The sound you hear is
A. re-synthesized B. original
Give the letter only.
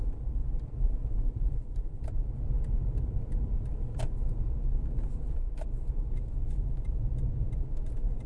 A